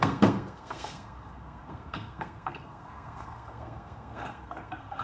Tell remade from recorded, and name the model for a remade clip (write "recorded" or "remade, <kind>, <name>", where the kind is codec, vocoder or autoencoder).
remade, codec, SNAC